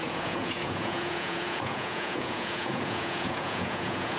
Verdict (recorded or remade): remade